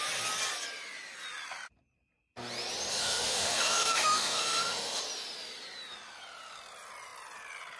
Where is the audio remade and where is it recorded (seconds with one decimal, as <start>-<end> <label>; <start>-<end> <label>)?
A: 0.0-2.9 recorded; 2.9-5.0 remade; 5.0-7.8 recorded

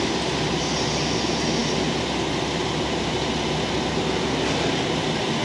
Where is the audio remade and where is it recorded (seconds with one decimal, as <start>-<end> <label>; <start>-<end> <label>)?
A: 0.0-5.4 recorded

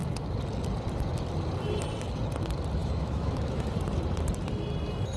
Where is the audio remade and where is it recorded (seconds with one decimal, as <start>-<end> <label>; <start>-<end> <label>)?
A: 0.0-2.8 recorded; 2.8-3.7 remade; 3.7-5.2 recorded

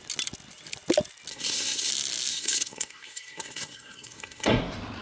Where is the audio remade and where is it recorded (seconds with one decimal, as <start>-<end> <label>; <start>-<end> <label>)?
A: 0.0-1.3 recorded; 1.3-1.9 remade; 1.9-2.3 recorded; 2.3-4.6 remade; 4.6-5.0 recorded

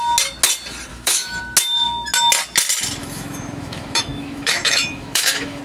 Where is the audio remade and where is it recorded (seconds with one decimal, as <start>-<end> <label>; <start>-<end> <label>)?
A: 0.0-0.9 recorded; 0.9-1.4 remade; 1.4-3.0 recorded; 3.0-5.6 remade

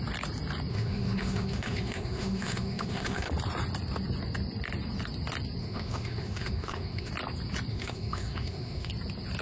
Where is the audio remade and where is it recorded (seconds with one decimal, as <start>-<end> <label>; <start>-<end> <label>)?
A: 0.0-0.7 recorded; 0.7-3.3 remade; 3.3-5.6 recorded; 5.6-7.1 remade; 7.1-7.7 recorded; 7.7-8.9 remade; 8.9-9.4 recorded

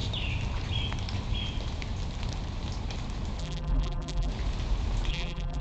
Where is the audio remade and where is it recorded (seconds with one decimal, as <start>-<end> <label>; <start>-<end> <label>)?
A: 0.0-3.4 recorded; 3.4-4.3 remade; 4.3-5.1 recorded; 5.1-5.6 remade

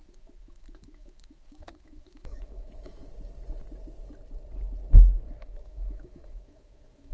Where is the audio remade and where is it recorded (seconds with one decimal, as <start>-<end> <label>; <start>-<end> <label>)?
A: 0.0-3.0 remade; 3.0-5.4 recorded; 5.4-7.1 remade